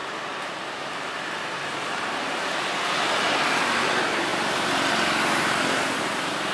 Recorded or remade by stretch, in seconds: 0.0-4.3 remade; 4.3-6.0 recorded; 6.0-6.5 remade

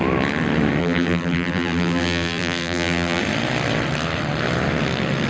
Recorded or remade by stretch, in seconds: 0.0-0.8 recorded; 0.8-3.2 remade; 3.2-5.3 recorded

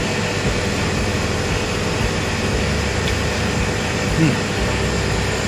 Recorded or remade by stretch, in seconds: 0.0-2.9 recorded; 2.9-4.0 remade; 4.0-5.5 recorded

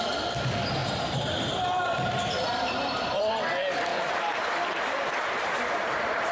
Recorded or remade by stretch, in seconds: 0.0-0.8 recorded; 0.8-3.3 remade; 3.3-3.9 recorded; 3.9-6.3 remade

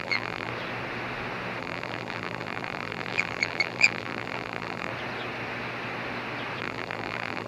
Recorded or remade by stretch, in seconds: 0.0-0.5 remade; 0.5-1.6 recorded; 1.6-4.9 remade; 4.9-6.6 recorded; 6.6-7.5 remade

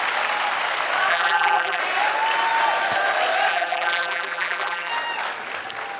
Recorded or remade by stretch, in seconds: 0.0-1.1 recorded; 1.1-1.8 remade; 1.8-3.5 recorded; 3.5-4.9 remade; 4.9-6.0 recorded

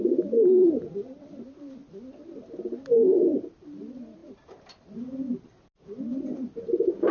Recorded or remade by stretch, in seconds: 0.0-1.8 remade; 1.8-3.6 recorded; 3.6-4.2 remade; 4.2-6.0 recorded; 6.0-7.1 remade